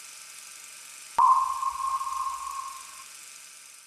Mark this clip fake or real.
real